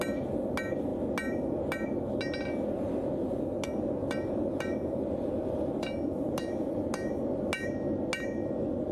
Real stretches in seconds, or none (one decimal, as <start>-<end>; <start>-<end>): 0.0-8.9